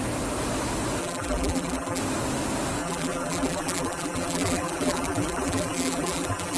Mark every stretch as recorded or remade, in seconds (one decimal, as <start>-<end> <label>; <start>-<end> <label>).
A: 0.0-1.0 recorded; 1.0-2.0 remade; 2.0-2.8 recorded; 2.8-6.6 remade